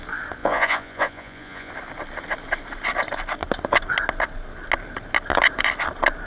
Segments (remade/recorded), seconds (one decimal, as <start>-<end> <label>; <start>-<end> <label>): 0.0-0.4 recorded; 0.4-1.7 remade; 1.7-6.3 recorded